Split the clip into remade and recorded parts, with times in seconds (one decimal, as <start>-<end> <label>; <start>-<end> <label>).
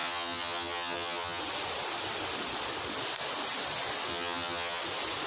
0.0-1.4 remade; 1.4-4.1 recorded; 4.1-4.8 remade; 4.8-5.3 recorded